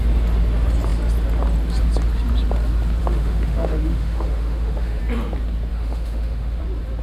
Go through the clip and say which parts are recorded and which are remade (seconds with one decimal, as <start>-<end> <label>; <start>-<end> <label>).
0.0-3.0 recorded; 3.0-5.0 remade; 5.0-5.7 recorded; 5.7-6.6 remade; 6.6-7.0 recorded